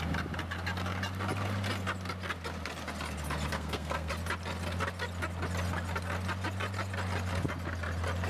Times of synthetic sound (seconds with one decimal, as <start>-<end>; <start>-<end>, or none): 3.5-4.1

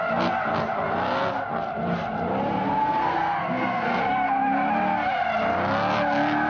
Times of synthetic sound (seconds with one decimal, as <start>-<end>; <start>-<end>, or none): 2.8-4.0